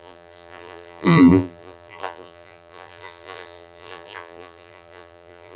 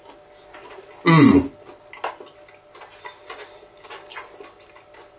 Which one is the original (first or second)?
second